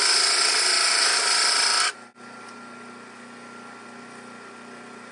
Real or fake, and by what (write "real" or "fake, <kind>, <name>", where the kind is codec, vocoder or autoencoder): fake, vocoder, BigVGAN v2